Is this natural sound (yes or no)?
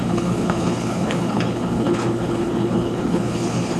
no